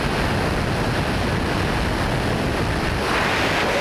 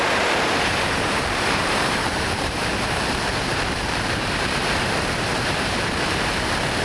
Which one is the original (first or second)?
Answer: first